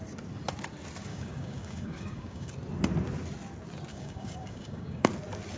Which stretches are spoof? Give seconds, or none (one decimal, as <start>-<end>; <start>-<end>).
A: 1.1-2.5; 3.9-5.1